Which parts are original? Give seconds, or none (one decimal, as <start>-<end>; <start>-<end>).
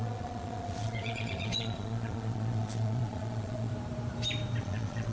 3.7-4.6